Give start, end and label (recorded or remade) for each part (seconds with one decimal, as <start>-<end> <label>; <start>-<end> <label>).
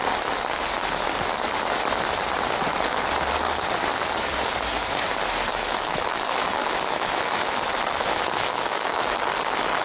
0.0-5.5 recorded; 5.5-9.3 remade; 9.3-9.8 recorded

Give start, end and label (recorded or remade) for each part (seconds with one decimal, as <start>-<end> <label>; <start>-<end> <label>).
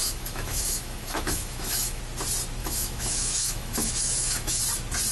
0.0-2.0 remade; 2.0-2.6 recorded; 2.6-4.6 remade; 4.6-5.1 recorded